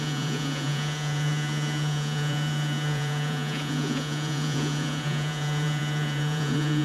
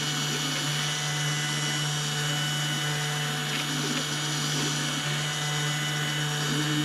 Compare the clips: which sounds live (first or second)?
second